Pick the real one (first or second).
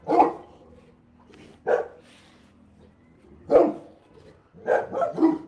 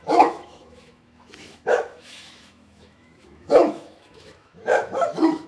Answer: first